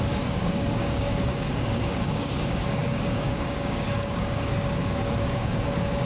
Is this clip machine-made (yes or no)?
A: yes